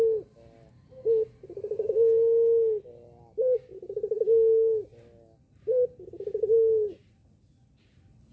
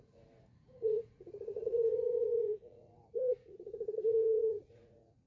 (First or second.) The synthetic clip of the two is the second